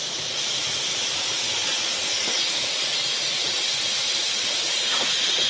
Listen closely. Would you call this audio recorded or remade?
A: remade